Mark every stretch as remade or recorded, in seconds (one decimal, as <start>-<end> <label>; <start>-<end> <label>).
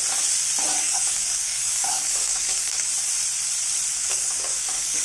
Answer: 0.0-0.7 recorded; 0.7-2.9 remade; 2.9-3.9 recorded; 3.9-5.0 remade